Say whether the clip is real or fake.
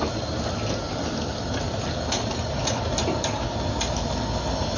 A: real